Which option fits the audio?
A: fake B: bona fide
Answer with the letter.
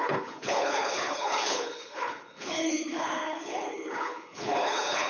A